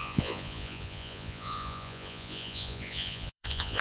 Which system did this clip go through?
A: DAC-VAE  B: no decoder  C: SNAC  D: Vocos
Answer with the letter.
D